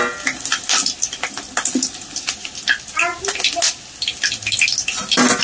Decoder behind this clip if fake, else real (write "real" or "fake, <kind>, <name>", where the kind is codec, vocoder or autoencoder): real